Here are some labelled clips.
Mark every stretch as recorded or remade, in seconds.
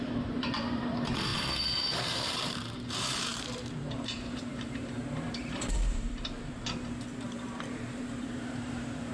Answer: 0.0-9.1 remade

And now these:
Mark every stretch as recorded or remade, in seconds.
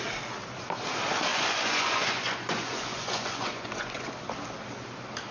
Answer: 0.0-1.3 recorded; 1.3-4.1 remade; 4.1-5.3 recorded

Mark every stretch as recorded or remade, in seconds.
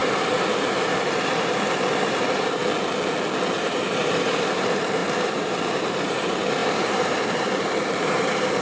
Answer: 0.0-2.6 remade; 2.6-3.6 recorded; 3.6-8.6 remade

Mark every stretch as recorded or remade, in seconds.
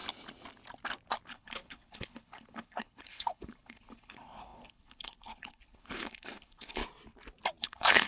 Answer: 0.0-1.3 recorded; 1.3-6.8 remade; 6.8-7.6 recorded; 7.6-8.1 remade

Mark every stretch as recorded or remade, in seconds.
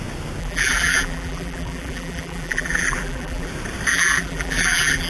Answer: 0.0-0.4 recorded; 0.4-3.5 remade; 3.5-3.9 recorded; 3.9-5.1 remade